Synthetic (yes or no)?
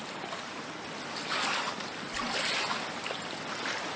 no